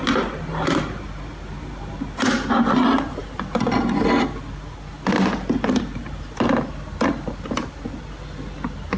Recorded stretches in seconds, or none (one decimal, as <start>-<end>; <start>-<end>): 0.0-9.0